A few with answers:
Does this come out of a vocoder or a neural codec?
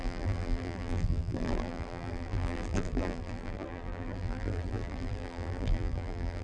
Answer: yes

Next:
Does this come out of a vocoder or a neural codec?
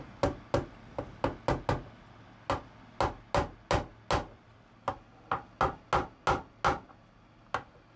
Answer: no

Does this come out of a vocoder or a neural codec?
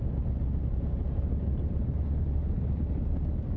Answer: no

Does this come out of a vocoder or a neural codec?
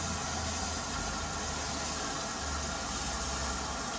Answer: no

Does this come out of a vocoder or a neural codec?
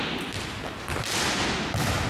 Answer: no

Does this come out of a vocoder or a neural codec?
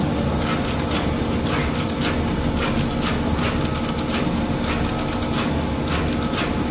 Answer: no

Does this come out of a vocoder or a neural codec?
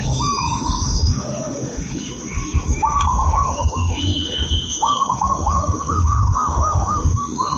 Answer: yes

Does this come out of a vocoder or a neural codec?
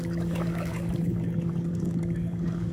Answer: yes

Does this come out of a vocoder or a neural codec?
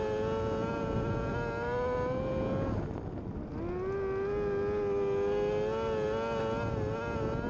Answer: no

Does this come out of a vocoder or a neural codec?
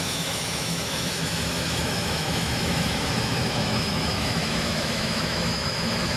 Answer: yes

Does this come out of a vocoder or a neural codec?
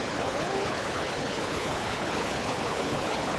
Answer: yes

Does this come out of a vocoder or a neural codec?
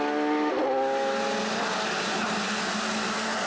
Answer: no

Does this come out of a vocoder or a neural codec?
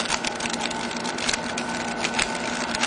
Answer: no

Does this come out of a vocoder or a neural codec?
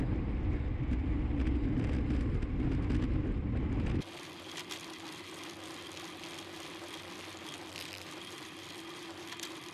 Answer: no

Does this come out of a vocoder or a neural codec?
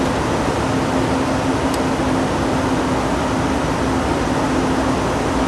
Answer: no